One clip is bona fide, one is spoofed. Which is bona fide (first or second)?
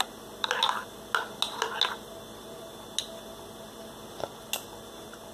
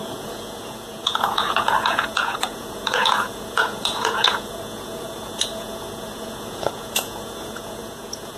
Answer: first